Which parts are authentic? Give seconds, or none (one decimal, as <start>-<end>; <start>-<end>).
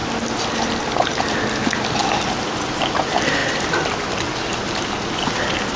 0.0-2.0; 2.7-5.8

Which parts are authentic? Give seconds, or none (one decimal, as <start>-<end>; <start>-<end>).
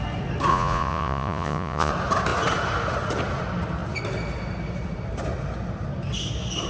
0.0-0.5; 1.9-6.7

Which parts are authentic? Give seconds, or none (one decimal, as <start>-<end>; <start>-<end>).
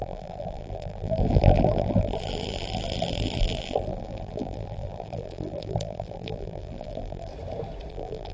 7.3-7.9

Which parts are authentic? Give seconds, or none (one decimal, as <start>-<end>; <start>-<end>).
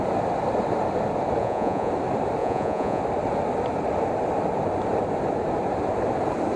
0.0-1.4; 1.9-2.4; 3.0-6.6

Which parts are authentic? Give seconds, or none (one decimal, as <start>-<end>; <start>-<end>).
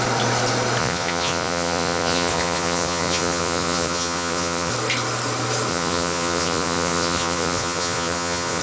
0.0-0.8; 4.7-5.7